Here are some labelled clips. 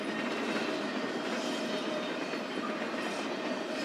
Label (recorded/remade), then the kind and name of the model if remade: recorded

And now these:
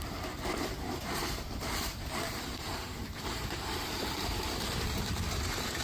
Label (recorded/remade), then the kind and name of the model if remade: remade, vocoder, BigVGAN v2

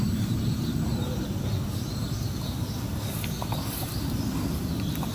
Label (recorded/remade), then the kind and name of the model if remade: remade, vocoder, BigVGAN v2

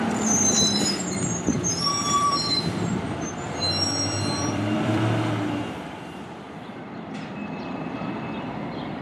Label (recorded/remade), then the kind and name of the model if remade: remade, vocoder, BigVGAN v2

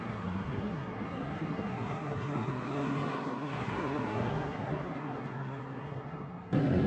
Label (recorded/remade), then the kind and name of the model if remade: remade, codec, SNAC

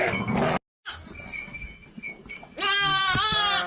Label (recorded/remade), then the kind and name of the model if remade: recorded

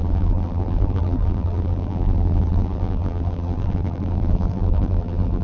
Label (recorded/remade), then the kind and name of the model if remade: remade, vocoder, BigVGAN v2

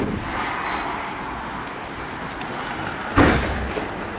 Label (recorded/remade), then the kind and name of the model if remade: recorded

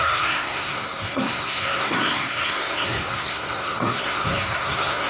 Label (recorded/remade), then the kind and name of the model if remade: remade, codec, SNAC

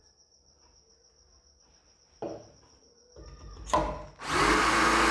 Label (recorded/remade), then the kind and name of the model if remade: recorded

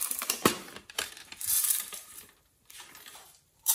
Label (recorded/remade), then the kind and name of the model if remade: remade, vocoder, BigVGAN v2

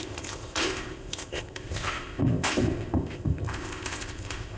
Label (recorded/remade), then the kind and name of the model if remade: remade, codec, ZipCodec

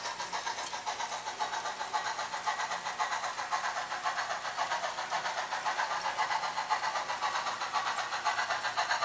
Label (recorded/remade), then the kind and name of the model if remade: recorded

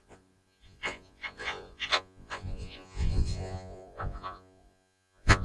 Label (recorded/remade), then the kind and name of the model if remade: remade, vocoder, Vocos